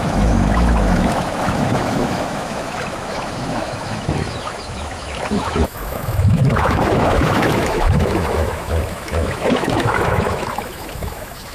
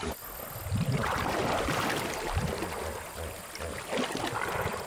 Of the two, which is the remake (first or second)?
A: first